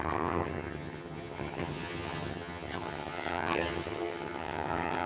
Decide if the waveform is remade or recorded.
remade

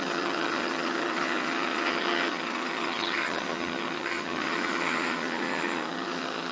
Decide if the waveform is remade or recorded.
remade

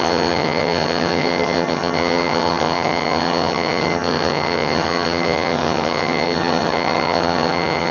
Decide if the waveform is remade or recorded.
remade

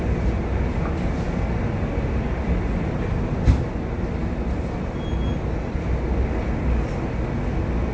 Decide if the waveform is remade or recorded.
recorded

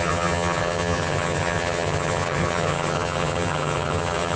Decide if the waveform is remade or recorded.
remade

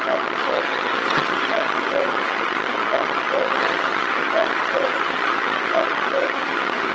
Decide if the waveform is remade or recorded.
remade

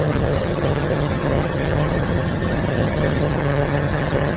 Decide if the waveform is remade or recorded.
remade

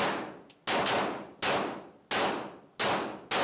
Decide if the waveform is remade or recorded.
recorded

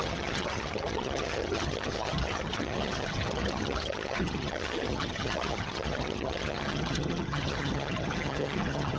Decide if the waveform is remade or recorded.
remade